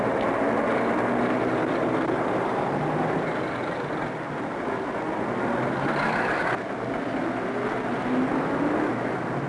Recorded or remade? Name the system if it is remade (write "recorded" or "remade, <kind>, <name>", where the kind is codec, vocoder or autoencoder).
recorded